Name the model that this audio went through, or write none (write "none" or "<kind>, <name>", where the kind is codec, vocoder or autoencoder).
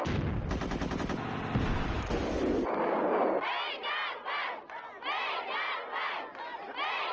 none